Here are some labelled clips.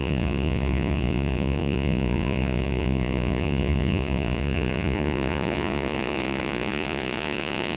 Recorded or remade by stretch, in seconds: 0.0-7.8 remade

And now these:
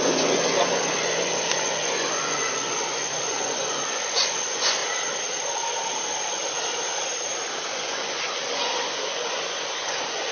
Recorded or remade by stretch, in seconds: 0.0-4.8 remade; 4.8-7.7 recorded; 7.7-10.3 remade